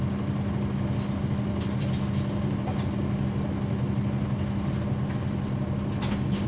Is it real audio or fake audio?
real